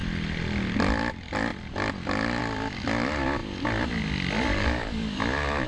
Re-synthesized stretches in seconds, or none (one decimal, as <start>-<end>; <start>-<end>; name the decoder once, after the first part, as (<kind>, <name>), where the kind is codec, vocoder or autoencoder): 4.5-5.2 (codec, DAC)